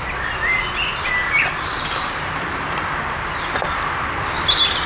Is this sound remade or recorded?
recorded